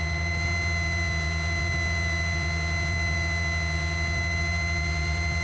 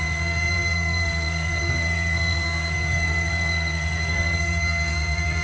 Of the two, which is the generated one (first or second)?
second